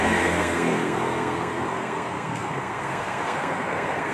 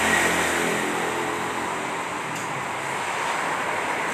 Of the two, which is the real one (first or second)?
second